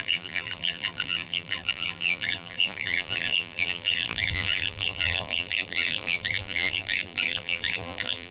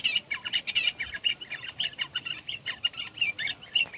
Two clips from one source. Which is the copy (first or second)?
first